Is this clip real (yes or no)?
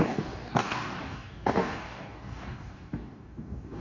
no